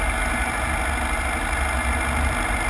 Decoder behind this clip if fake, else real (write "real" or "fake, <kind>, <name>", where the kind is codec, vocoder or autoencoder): real